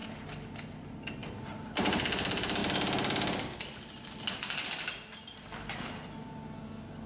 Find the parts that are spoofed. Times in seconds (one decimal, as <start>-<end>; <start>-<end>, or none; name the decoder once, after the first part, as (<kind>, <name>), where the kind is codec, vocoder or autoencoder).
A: 1.2-2.0 (vocoder, BigVGAN v2)